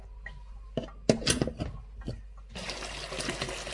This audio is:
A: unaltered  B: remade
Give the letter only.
A